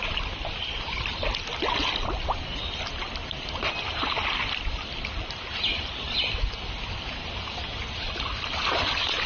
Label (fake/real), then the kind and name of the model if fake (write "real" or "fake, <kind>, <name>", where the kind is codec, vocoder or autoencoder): real